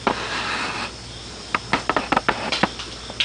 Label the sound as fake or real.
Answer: real